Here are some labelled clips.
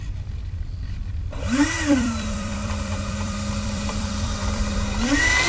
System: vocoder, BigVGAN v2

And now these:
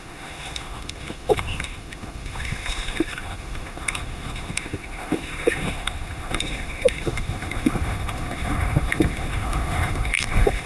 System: autoencoder, DAC-VAE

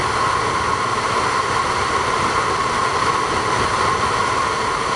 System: none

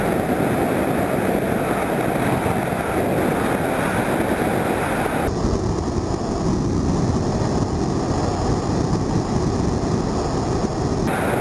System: none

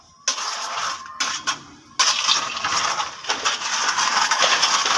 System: none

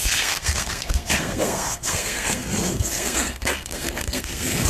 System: codec, SNAC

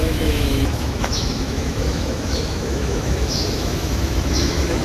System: autoencoder, DAC-VAE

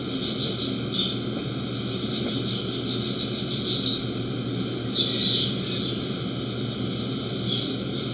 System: none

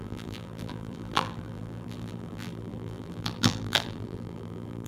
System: vocoder, BigVGAN v2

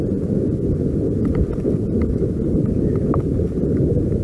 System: none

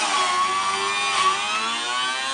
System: none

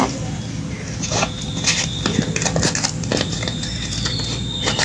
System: none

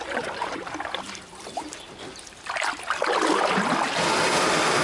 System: vocoder, BigVGAN v2